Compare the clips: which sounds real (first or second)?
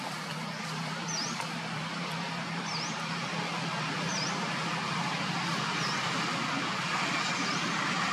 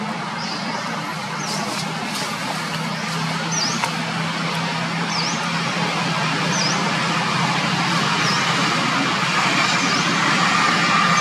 second